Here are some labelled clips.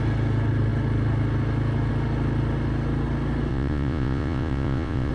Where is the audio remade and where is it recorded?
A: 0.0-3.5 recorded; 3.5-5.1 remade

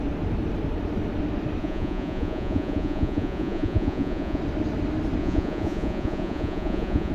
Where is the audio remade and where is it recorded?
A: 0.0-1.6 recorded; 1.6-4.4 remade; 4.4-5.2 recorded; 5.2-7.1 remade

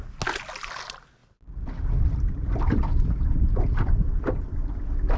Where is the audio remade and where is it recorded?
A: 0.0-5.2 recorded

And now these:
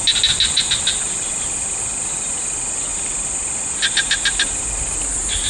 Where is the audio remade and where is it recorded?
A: 0.0-5.5 recorded

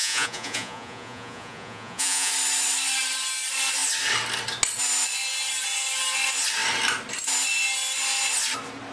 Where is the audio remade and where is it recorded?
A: 0.0-2.3 remade; 2.3-8.9 recorded